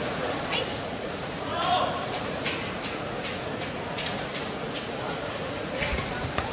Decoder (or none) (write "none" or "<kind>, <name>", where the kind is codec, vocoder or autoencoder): vocoder, Vocos